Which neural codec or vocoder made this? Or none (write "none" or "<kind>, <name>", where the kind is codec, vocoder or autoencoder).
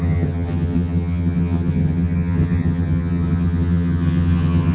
vocoder, HiFi-GAN